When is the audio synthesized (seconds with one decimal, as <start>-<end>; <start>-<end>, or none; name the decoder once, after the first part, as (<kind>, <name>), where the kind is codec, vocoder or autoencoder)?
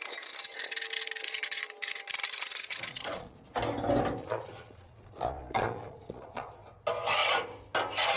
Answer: 2.5-3.4 (vocoder, Vocos); 4.2-6.5